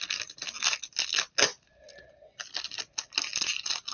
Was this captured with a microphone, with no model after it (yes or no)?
yes